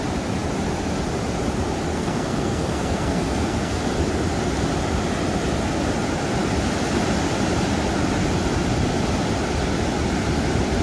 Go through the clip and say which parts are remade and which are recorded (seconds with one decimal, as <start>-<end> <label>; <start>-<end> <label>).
0.0-1.9 recorded; 1.9-3.8 remade; 3.8-10.8 recorded